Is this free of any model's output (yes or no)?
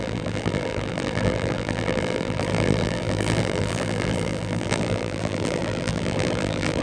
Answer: no